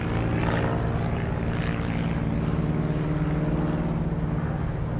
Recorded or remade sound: recorded